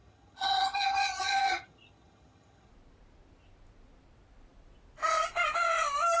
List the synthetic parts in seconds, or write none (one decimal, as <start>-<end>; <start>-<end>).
0.0-2.7

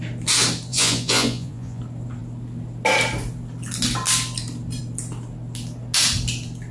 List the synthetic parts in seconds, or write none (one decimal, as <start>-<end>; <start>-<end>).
0.7-1.8

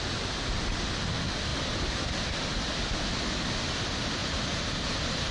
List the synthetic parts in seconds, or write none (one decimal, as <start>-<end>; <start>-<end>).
1.5-2.1; 4.2-5.3

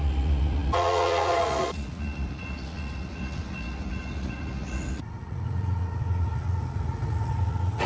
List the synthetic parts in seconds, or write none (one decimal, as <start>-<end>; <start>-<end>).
0.0-7.9

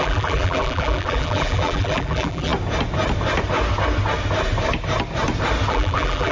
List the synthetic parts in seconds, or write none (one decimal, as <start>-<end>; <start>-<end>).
0.0-2.5; 5.7-6.3

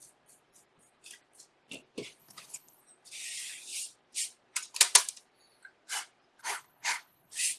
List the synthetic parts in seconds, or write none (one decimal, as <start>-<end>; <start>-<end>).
2.2-2.8; 6.4-7.6

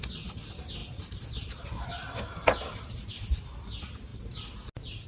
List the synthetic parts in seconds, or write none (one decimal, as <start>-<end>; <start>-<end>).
none